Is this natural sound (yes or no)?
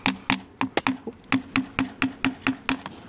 yes